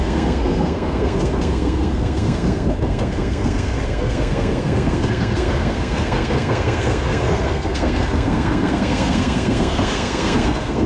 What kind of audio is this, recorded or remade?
remade